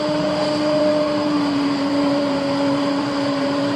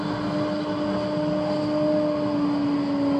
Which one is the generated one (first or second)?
first